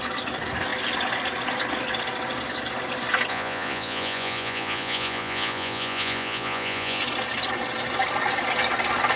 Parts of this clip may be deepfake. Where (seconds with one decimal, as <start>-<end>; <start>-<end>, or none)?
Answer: 3.3-7.0